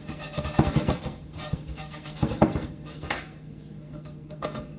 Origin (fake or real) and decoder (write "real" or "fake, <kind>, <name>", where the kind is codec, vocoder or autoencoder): fake, codec, SNAC